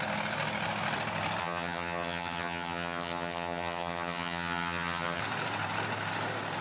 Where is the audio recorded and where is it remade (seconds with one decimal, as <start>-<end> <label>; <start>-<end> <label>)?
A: 0.0-1.4 recorded; 1.4-5.2 remade; 5.2-6.6 recorded